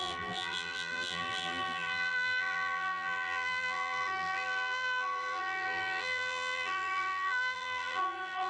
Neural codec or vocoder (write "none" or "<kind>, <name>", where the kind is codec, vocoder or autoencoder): vocoder, BigVGAN v2